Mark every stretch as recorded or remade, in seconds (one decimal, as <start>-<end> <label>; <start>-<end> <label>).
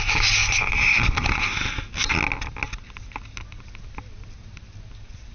0.0-5.3 recorded